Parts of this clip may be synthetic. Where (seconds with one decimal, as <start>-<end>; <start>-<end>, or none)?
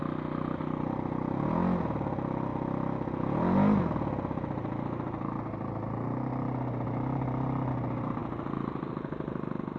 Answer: none